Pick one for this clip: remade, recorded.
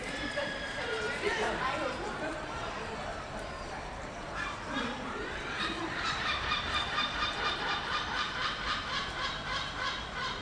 remade